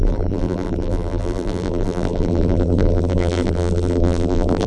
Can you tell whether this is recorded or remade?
remade